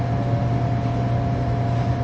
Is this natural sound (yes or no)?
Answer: yes